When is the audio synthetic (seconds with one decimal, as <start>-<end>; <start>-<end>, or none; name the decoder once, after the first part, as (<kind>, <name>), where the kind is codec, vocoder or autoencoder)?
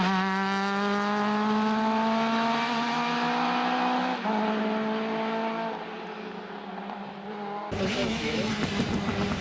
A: 8.0-8.5 (autoencoder, DAC-VAE)